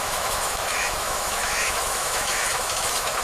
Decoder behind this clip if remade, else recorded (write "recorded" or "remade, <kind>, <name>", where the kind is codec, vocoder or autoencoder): remade, autoencoder, DAC-VAE